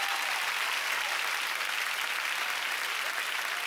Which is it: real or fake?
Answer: real